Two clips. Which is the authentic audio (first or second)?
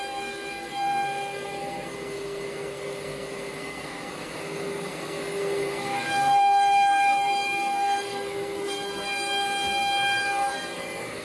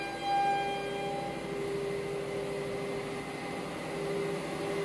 second